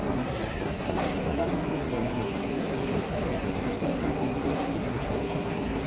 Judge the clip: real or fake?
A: fake